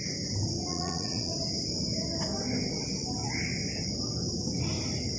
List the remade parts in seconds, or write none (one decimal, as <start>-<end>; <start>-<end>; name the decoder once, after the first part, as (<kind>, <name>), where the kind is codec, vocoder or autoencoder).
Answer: 0.7-1.3 (vocoder, Vocos)

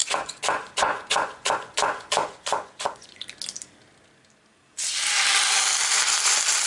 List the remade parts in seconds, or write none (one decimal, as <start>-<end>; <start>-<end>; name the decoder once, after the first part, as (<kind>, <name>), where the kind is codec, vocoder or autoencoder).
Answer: 0.0-3.2 (vocoder, Vocos)

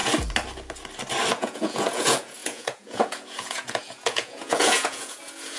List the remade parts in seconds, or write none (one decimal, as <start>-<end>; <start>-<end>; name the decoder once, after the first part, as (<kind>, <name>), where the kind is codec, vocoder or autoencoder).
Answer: 1.3-5.6 (vocoder, Vocos)

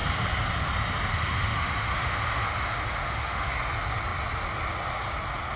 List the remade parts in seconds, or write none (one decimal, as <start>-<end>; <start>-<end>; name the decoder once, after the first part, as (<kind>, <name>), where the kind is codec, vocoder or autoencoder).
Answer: 1.1-3.5 (autoencoder, DAC-VAE)

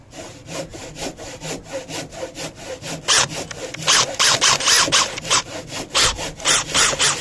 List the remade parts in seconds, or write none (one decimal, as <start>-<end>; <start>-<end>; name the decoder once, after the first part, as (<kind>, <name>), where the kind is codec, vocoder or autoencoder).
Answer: none

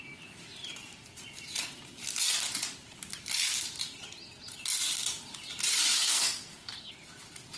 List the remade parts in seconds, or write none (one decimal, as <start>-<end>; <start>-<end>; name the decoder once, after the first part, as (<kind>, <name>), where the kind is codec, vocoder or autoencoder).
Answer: 5.9-6.9 (codec, SNAC)

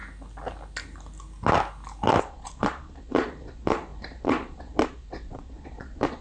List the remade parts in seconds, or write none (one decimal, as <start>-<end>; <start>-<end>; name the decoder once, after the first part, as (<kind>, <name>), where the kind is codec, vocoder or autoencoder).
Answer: 2.2-6.2 (vocoder, Vocos)